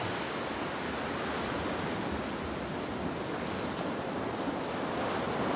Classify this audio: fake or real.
real